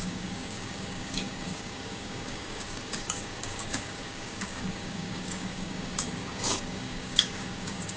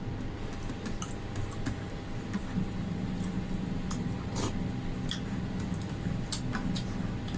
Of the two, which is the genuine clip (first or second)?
second